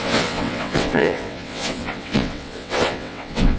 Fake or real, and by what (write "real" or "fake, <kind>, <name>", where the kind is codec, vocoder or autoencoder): fake, vocoder, WaveNeXt